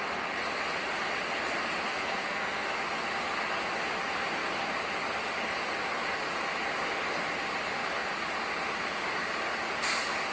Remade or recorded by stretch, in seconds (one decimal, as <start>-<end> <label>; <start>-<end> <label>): 0.0-1.9 recorded; 1.9-2.7 remade; 2.7-10.3 recorded